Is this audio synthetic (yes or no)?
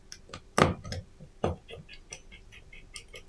no